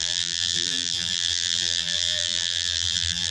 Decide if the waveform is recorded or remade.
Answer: remade